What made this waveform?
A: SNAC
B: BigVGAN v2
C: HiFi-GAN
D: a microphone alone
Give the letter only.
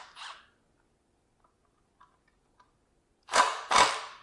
D